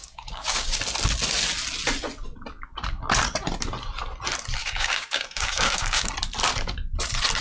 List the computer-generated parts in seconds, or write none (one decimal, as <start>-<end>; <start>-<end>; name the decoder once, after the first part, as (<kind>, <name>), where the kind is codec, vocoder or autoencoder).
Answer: 0.0-0.8 (codec, DAC); 4.6-6.1